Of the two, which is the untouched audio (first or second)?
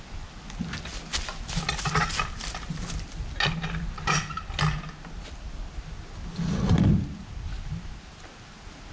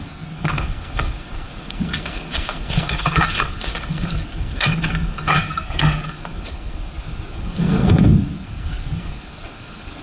first